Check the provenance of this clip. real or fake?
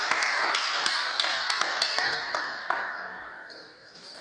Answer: fake